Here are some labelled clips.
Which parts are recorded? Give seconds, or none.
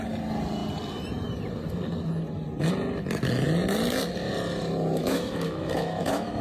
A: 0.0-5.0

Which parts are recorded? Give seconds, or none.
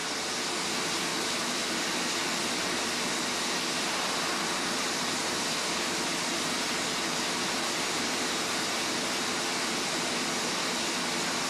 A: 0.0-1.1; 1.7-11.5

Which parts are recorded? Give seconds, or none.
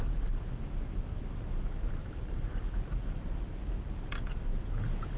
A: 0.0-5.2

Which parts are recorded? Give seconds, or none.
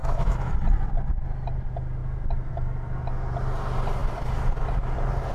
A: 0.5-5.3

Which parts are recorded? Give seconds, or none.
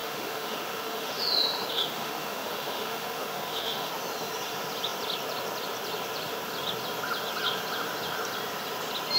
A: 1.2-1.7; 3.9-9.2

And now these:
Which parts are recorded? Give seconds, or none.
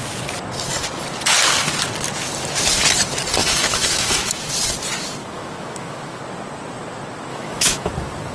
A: 0.0-3.4; 4.5-5.2; 6.2-7.3; 7.9-8.3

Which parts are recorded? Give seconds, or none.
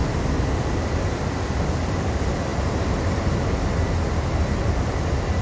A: 0.0-5.4